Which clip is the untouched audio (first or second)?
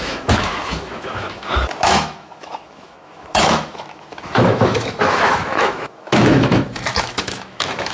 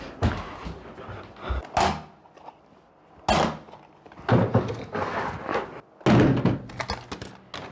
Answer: second